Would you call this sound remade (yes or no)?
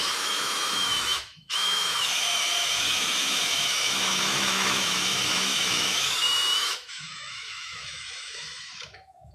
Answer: yes